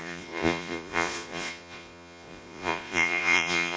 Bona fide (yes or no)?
no